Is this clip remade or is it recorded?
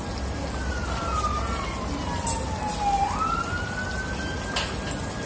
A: recorded